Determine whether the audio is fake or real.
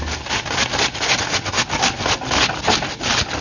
real